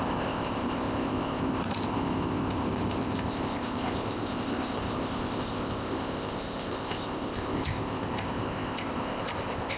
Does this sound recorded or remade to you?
remade